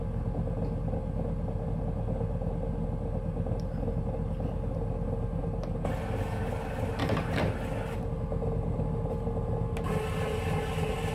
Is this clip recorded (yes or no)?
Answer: yes